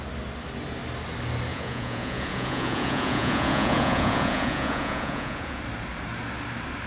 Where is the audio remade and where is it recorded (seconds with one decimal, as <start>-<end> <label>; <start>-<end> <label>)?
0.0-1.5 recorded; 1.5-5.6 remade; 5.6-6.9 recorded